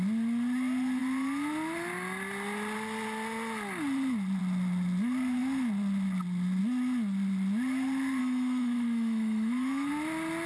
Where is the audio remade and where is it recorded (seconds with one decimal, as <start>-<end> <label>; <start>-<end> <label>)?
0.0-8.2 recorded; 8.2-9.9 remade; 9.9-10.5 recorded